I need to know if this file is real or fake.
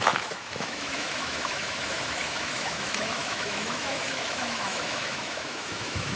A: fake